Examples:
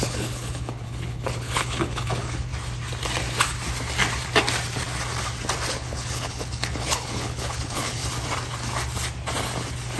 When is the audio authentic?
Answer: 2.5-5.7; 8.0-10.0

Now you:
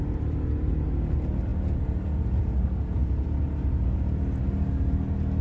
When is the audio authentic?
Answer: 0.0-5.4